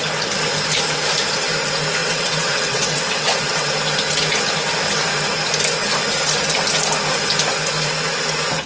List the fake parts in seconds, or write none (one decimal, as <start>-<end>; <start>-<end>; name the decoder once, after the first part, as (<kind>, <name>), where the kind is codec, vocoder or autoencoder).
2.0-3.7 (vocoder, WaveNeXt)